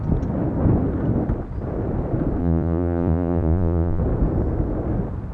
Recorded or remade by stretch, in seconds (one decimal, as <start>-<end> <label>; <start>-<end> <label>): 0.0-2.4 recorded; 2.4-4.0 remade; 4.0-5.3 recorded